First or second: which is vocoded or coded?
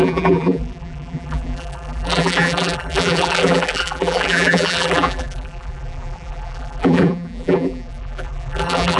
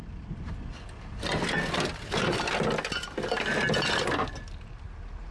first